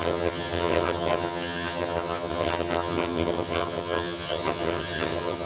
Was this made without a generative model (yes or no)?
no